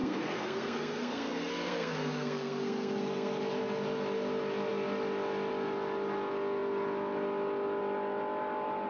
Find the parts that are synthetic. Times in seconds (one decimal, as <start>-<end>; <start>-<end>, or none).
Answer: 0.0-3.4